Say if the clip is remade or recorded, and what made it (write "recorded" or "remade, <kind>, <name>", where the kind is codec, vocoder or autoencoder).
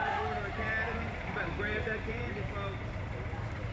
recorded